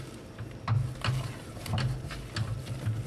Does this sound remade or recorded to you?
recorded